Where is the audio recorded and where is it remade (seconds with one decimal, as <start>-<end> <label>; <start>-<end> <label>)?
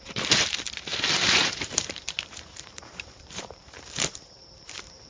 0.0-5.1 remade